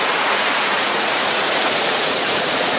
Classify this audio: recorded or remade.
remade